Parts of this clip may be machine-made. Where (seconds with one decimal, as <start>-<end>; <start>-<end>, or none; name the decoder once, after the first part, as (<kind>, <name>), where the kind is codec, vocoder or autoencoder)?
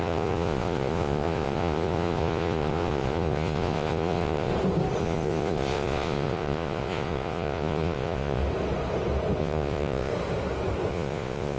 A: 0.0-4.5 (vocoder, Vocos); 5.0-8.4; 9.4-10.1; 10.9-11.6